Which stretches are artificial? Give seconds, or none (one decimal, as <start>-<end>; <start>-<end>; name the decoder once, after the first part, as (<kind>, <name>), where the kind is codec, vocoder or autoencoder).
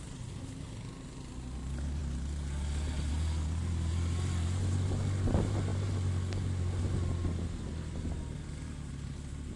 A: none